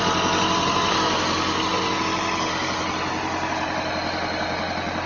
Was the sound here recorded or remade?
recorded